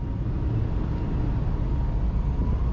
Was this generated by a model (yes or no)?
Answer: no